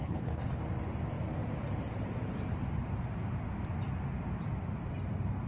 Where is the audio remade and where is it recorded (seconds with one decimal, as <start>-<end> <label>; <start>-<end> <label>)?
0.0-0.6 remade; 0.6-5.5 recorded